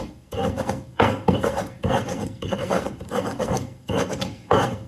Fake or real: fake